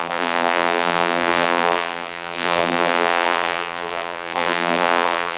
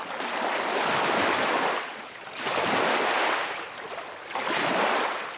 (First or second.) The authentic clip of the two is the second